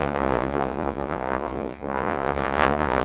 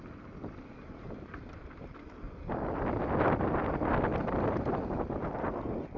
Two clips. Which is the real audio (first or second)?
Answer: second